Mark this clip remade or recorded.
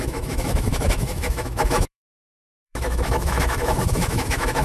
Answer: remade